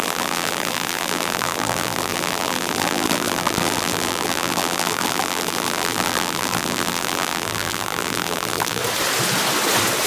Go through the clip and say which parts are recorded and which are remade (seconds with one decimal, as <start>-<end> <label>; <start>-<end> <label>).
0.0-8.8 remade; 8.8-10.1 recorded